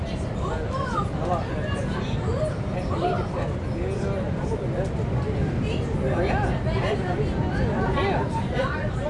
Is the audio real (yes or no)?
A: yes